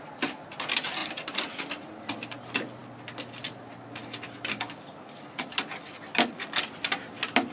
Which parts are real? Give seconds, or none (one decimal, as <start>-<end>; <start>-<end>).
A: 0.0-7.5